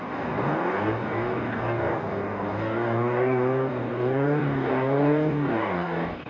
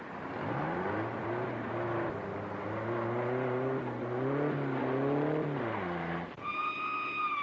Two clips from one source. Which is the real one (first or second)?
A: second